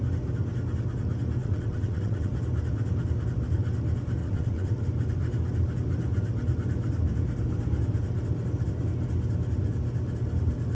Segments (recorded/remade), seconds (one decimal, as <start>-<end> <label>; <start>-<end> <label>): 0.0-1.4 recorded; 1.4-2.3 remade; 2.3-4.2 recorded; 4.2-4.8 remade; 4.8-10.7 recorded